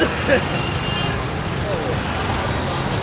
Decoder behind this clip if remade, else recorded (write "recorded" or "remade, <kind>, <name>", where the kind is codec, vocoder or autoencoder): recorded